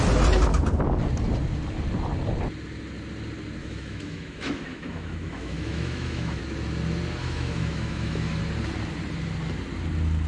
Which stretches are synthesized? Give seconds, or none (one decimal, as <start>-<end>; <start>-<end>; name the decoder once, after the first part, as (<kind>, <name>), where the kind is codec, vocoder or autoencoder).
3.6-6.4 (autoencoder, DAC-VAE); 7.2-8.4